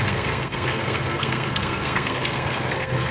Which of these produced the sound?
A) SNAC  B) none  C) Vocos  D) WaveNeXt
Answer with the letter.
A